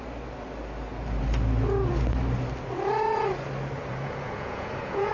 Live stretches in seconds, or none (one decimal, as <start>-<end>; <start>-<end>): 0.0-3.8